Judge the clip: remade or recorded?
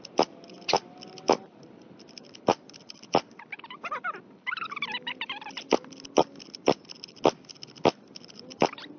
recorded